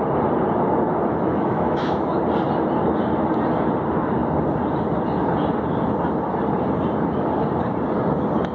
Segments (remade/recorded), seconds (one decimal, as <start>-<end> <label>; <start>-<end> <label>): 0.0-1.1 recorded; 1.1-2.2 remade; 2.2-8.5 recorded

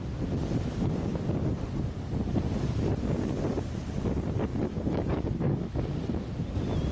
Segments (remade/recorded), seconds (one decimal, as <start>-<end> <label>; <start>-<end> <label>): 0.0-4.5 recorded; 4.5-5.8 remade; 5.8-6.9 recorded

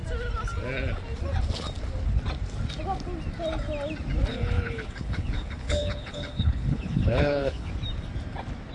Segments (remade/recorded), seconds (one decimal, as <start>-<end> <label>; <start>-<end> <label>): 0.0-4.3 recorded; 4.3-7.7 remade; 7.7-8.7 recorded

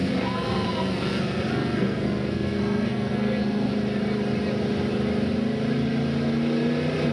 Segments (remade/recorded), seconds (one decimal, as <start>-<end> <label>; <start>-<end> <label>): 0.0-3.7 remade; 3.7-7.1 recorded

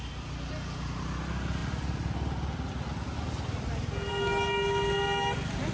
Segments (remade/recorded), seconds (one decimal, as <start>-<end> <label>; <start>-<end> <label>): 0.0-5.7 recorded

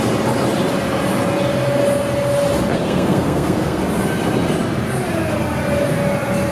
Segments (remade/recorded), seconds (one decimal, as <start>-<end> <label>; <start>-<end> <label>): 0.0-2.7 recorded; 2.7-3.8 remade; 3.8-6.5 recorded